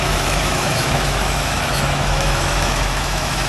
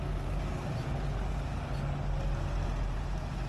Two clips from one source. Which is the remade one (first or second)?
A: first